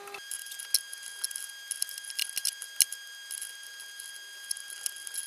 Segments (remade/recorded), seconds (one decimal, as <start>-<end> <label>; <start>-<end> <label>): 0.0-5.3 recorded